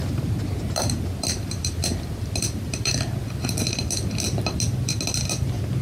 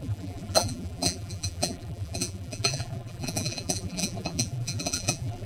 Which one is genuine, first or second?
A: first